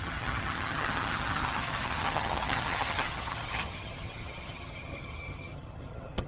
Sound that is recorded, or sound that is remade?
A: remade